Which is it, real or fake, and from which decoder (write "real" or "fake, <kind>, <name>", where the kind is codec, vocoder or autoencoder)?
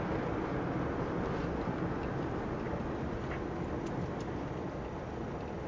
real